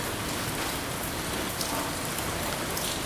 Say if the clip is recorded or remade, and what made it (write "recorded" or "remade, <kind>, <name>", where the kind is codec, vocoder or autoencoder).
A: recorded